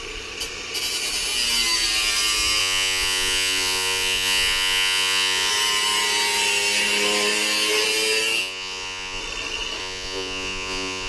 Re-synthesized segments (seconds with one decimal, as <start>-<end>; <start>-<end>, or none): 2.6-5.5; 8.4-9.2; 9.8-11.1